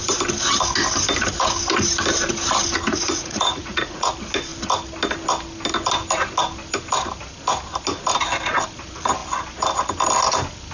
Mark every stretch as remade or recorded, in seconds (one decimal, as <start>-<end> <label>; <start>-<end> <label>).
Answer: 0.0-2.9 recorded; 2.9-4.1 remade; 4.1-10.7 recorded

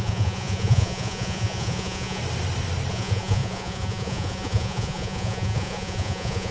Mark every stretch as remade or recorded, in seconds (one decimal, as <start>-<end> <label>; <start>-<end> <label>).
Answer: 0.0-2.2 remade; 2.2-2.9 recorded; 2.9-6.5 remade

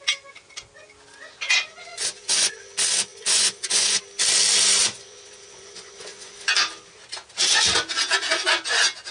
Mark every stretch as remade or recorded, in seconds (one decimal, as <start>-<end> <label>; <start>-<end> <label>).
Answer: 0.0-1.9 recorded; 1.9-2.5 remade; 2.5-3.1 recorded; 3.1-4.0 remade; 4.0-4.8 recorded; 4.8-6.4 remade; 6.4-9.1 recorded

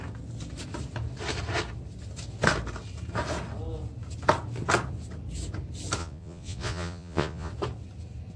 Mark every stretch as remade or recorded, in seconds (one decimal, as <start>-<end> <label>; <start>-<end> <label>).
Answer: 0.0-6.0 recorded; 6.0-7.5 remade; 7.5-8.4 recorded

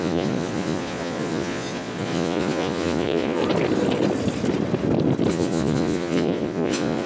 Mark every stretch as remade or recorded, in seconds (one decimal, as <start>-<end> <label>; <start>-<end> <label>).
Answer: 0.0-3.4 remade; 3.4-5.3 recorded; 5.3-7.1 remade

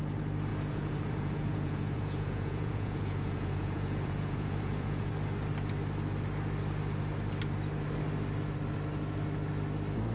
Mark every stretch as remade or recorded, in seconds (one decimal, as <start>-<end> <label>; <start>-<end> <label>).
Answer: 0.0-0.5 recorded; 0.5-5.1 remade; 5.1-10.1 recorded

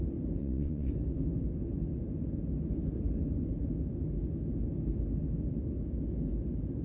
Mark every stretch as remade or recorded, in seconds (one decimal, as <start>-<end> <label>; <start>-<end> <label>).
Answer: 0.0-0.4 recorded; 0.4-0.9 remade; 0.9-6.8 recorded

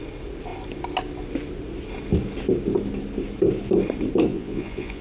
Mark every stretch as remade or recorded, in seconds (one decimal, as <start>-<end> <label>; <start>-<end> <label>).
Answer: 0.0-4.3 recorded; 4.3-5.0 remade